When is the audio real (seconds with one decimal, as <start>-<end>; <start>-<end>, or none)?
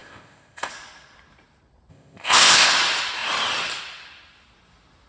0.7-1.9; 2.7-5.1